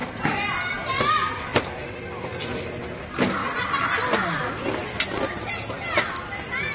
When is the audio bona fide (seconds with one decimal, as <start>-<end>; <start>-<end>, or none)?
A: 0.0-6.7